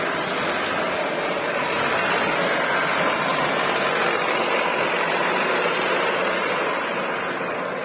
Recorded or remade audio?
recorded